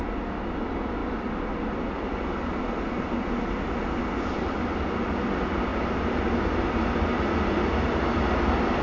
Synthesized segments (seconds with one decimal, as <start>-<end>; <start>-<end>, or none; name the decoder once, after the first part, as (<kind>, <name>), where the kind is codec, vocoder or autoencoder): none